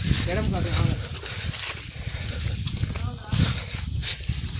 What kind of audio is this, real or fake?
real